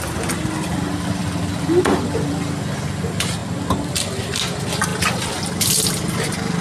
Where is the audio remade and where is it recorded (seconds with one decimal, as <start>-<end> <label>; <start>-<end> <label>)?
0.0-6.6 recorded